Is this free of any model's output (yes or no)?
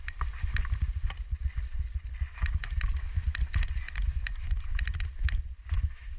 yes